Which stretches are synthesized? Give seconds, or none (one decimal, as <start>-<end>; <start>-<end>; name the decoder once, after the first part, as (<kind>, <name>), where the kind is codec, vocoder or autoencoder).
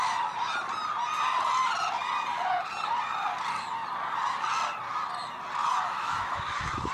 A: 5.6-6.9 (autoencoder, DAC-VAE)